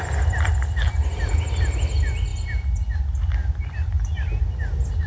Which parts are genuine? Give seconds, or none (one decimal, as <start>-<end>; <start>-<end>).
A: 0.0-5.1